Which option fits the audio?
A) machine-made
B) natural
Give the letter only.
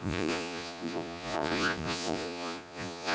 A